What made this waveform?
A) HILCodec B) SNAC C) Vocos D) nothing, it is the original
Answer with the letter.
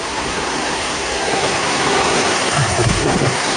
B